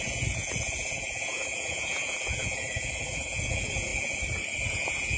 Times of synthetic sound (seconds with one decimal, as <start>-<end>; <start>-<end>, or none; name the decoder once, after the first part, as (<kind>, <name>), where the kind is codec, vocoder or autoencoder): 0.0-3.9 (vocoder, Vocos); 4.7-5.2